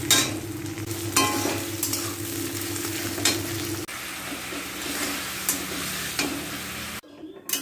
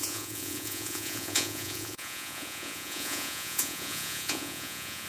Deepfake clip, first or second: second